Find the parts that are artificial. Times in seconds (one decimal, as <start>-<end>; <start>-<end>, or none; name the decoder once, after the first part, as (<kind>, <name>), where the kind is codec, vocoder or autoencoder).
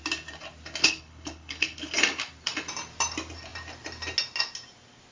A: 0.8-1.9 (codec, HILCodec)